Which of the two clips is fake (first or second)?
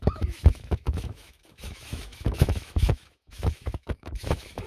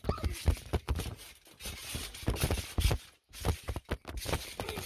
first